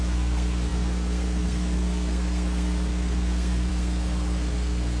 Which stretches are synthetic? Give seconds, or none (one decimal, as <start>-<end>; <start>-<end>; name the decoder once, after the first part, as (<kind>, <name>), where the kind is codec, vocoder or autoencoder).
0.0-5.0 (codec, SNAC)